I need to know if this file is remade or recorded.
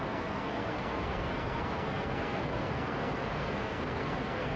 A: remade